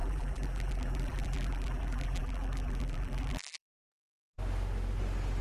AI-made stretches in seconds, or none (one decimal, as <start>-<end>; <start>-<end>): 0.0-3.7